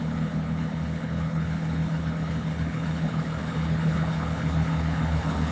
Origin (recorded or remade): remade